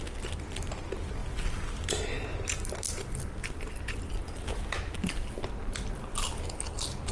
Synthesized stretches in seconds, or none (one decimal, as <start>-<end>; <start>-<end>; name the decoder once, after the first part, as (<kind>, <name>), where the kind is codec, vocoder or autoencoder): 1.2-1.9 (vocoder, BigVGAN v2)